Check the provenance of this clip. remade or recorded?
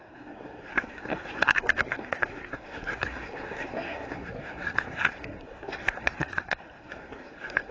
remade